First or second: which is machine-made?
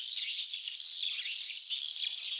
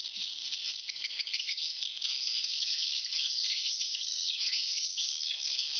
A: second